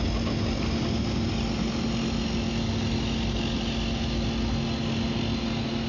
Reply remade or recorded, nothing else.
recorded